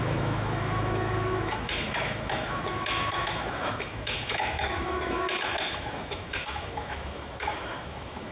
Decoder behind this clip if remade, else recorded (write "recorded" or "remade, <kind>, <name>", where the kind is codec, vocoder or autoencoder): remade, autoencoder, DAC-VAE